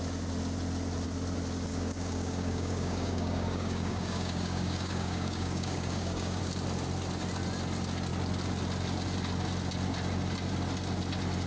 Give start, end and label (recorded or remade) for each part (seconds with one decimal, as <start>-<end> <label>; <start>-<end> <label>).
0.0-1.7 recorded; 1.7-6.4 remade; 6.4-11.5 recorded